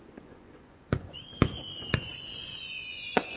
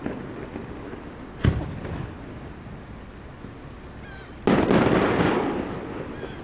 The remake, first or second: first